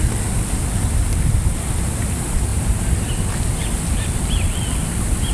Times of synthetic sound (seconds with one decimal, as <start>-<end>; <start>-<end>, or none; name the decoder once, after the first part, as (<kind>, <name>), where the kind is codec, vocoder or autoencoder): 2.5-3.1 (vocoder, BigVGAN v2); 4.8-5.3